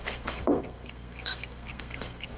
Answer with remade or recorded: remade